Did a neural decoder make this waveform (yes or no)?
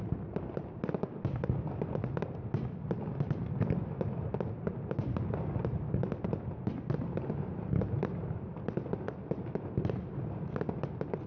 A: no